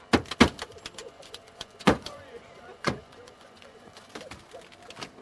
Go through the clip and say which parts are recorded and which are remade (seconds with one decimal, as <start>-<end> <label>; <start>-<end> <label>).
0.0-1.0 recorded; 1.0-4.1 remade; 4.1-5.2 recorded